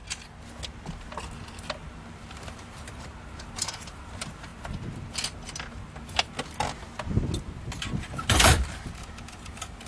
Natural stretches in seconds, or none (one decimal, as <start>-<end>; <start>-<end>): 0.0-1.5; 4.5-8.0